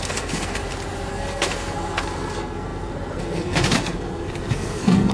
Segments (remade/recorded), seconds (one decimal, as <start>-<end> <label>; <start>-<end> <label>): 0.0-0.6 remade; 0.6-1.1 recorded; 1.1-5.1 remade